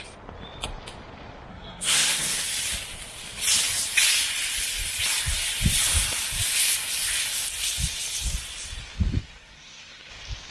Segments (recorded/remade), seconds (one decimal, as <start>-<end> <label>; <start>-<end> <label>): 0.0-1.5 recorded; 1.5-2.4 remade; 2.4-9.2 recorded; 9.2-10.1 remade; 10.1-10.5 recorded